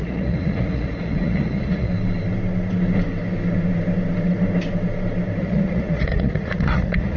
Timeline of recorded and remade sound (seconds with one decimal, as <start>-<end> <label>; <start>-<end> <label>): 0.0-1.9 remade; 1.9-5.4 recorded; 5.4-7.2 remade